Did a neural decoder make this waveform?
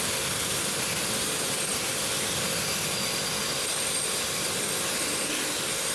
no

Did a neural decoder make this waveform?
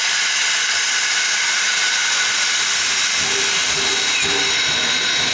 no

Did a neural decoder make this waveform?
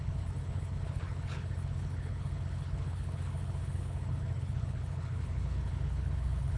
yes